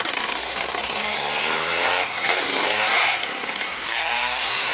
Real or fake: fake